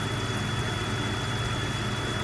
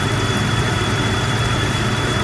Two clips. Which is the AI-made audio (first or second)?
second